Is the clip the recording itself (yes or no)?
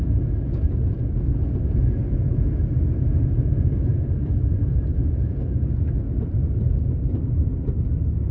yes